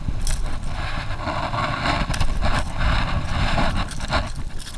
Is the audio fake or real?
real